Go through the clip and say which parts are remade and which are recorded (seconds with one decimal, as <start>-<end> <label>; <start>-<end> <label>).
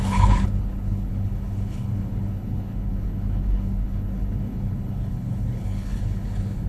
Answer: 0.0-6.7 remade